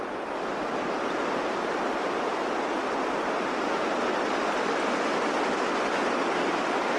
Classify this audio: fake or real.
real